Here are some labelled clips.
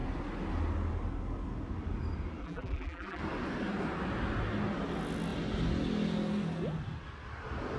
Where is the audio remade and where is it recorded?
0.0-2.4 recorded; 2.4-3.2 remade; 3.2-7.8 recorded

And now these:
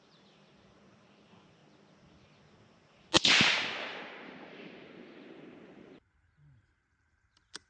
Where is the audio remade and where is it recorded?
0.0-1.6 remade; 1.6-3.3 recorded; 3.3-7.7 remade

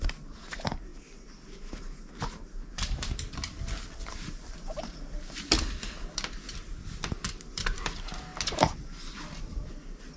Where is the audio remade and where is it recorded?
0.0-0.9 remade; 0.9-2.1 recorded; 2.1-6.7 remade; 6.7-7.4 recorded; 7.4-8.3 remade; 8.3-9.4 recorded; 9.4-10.2 remade

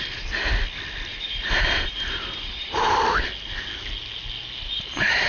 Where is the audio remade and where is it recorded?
0.0-1.1 recorded; 1.1-3.2 remade; 3.2-5.3 recorded

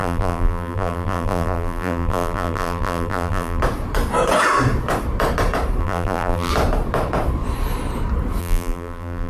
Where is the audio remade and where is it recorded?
0.0-3.6 remade; 3.6-5.8 recorded; 5.8-6.5 remade; 6.5-8.4 recorded; 8.4-9.3 remade